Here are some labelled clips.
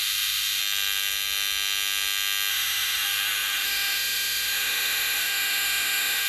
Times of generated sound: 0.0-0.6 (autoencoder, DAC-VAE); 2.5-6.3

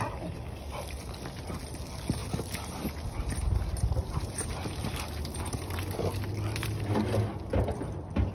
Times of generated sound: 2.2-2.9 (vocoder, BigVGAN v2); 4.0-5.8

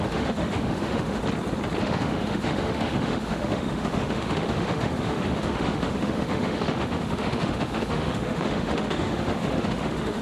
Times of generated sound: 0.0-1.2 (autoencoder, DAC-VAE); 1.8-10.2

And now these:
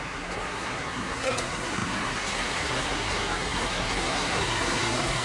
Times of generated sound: 0.0-5.2 (codec, SNAC)